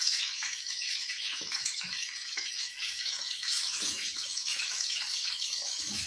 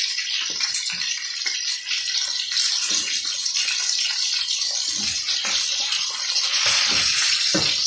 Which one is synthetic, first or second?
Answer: first